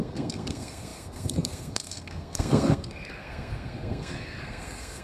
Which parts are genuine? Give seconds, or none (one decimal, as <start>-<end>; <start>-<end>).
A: none